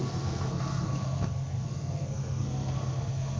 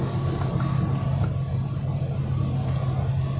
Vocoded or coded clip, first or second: first